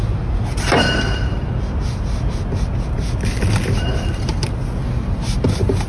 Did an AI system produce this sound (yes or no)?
no